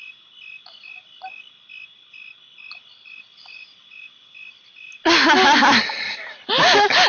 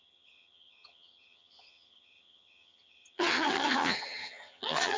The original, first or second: first